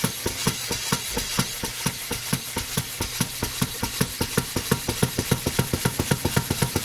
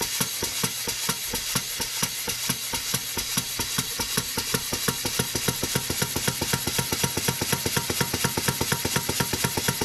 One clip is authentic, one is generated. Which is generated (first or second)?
first